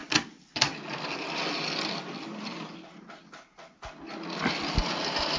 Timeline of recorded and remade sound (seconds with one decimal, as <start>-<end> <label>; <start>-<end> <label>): 0.0-5.4 recorded